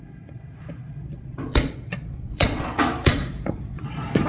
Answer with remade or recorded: remade